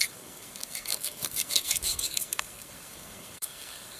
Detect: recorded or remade remade